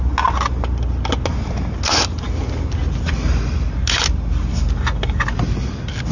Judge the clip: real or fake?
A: real